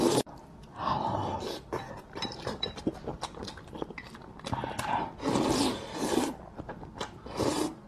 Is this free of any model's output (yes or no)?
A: yes